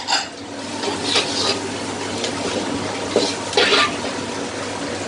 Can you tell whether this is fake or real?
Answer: real